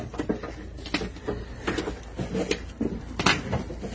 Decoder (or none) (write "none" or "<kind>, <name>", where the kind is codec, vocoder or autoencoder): none